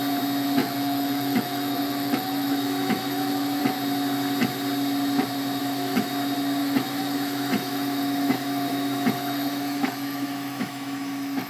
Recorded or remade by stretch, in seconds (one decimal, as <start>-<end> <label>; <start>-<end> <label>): 0.0-0.6 recorded; 0.6-3.6 remade; 3.6-5.6 recorded; 5.6-6.1 remade; 6.1-6.6 recorded; 6.6-11.5 remade